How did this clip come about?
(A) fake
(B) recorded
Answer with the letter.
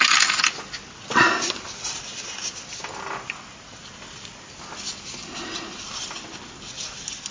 B